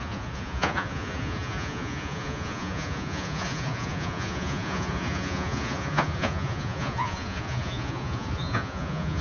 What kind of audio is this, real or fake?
fake